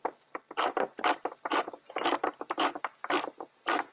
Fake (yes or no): no